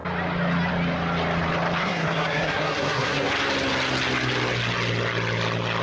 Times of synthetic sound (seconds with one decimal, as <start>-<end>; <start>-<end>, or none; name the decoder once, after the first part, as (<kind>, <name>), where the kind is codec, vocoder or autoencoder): 1.8-3.3 (codec, SNAC)